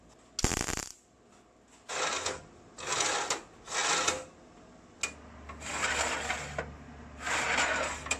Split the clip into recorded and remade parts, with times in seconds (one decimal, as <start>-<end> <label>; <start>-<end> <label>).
0.0-8.2 recorded